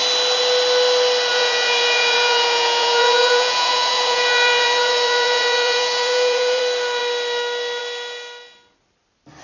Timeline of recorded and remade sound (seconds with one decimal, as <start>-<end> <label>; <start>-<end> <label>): 0.0-1.3 recorded; 1.3-6.6 remade; 6.6-9.4 recorded